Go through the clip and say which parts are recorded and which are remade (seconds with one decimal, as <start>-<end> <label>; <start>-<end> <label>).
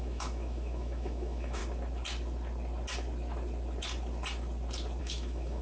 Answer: 0.0-1.6 remade; 1.6-5.0 recorded; 5.0-5.6 remade